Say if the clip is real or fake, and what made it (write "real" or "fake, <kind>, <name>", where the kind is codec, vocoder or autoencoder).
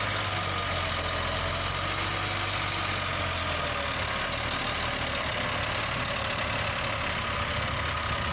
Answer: real